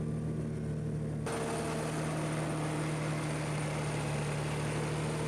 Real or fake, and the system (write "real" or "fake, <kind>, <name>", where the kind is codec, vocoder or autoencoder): real